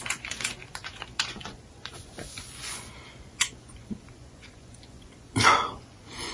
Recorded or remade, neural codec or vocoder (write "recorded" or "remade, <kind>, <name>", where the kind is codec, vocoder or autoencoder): remade, vocoder, Vocos